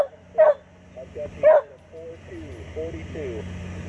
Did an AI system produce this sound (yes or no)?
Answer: no